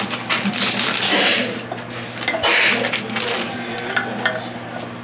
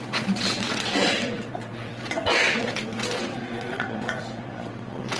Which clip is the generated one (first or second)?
second